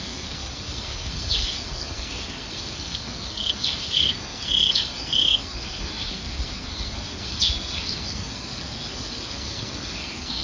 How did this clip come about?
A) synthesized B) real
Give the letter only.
A